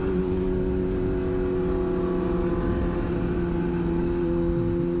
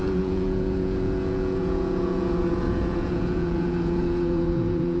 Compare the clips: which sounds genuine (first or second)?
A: first